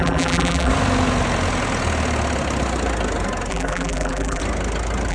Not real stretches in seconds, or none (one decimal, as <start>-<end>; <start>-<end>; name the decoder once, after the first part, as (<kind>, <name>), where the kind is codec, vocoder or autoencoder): 0.0-0.7 (vocoder, BigVGAN v2); 3.5-4.4